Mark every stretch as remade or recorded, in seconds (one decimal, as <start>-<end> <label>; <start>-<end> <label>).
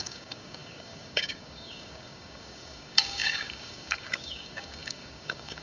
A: 0.0-5.6 remade